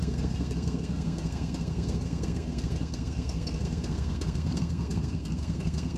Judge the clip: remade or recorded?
remade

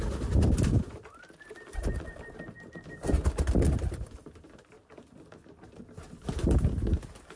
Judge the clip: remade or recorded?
recorded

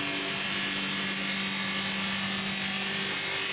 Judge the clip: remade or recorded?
recorded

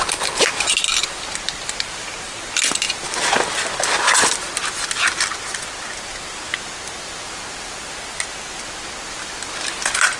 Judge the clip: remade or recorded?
recorded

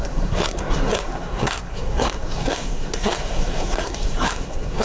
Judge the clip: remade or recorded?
remade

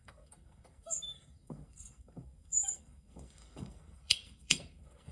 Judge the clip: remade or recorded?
remade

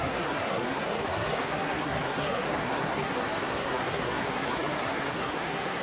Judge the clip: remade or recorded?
remade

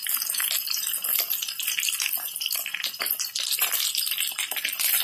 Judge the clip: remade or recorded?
recorded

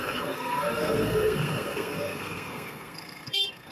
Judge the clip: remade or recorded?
remade